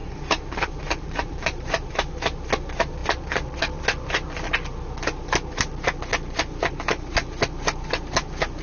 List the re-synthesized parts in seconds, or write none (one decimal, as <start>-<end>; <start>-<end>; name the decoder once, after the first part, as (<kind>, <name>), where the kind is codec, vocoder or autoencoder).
0.0-1.9 (vocoder, BigVGAN v2)

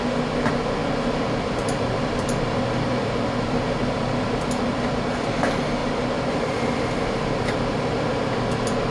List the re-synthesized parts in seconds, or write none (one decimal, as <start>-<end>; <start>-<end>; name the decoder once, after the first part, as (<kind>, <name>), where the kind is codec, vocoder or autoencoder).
0.8-5.0 (vocoder, BigVGAN v2); 5.8-8.9

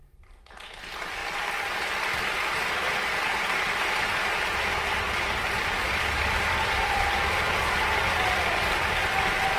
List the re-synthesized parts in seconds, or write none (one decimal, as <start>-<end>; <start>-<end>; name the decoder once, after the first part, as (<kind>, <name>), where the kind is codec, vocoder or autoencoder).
0.0-1.2 (vocoder, BigVGAN v2); 5.0-7.2; 8.0-9.6

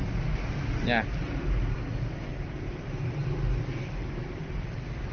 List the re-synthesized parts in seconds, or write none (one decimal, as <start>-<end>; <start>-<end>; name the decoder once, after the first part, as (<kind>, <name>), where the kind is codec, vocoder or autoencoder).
2.3-3.2 (vocoder, BigVGAN v2); 3.9-5.1

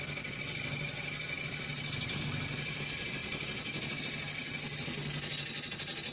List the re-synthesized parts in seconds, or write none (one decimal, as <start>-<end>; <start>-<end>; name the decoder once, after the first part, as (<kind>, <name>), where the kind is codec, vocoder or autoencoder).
none

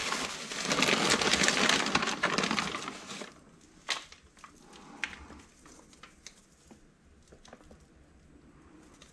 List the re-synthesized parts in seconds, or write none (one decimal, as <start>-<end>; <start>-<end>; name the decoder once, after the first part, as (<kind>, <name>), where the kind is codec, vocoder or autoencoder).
none

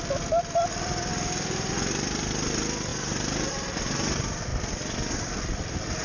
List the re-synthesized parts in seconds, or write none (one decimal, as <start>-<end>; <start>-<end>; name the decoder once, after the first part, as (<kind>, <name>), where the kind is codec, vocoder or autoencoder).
0.0-1.1 (vocoder, BigVGAN v2); 1.7-2.9; 3.5-6.0